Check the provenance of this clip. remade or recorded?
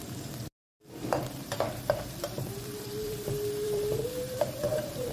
remade